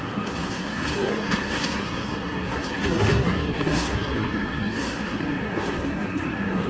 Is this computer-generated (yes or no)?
yes